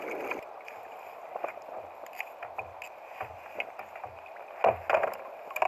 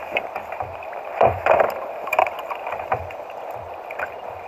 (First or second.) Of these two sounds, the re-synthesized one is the second